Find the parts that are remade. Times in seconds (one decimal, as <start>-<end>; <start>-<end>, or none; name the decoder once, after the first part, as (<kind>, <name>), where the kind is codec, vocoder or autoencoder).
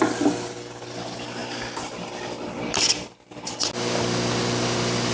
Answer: none